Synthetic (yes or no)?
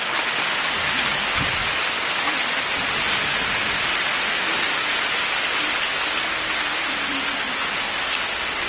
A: no